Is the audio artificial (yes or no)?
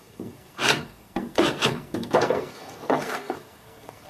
yes